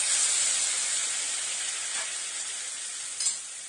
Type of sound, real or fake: real